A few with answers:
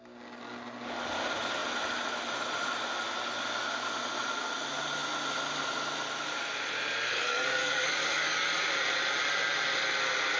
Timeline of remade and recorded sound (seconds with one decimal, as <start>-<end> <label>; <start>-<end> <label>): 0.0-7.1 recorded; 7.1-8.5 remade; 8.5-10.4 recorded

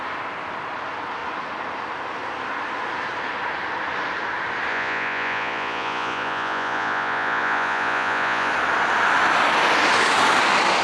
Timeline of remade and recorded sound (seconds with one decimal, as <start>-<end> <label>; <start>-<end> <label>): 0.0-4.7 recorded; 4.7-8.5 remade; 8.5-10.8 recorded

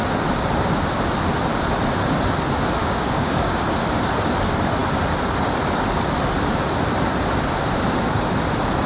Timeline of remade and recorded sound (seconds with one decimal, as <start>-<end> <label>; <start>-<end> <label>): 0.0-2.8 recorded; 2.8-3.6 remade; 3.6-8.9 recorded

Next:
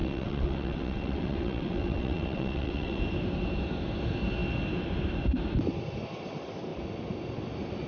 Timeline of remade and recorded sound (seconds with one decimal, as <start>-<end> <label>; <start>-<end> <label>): 0.0-3.0 remade; 3.0-7.9 recorded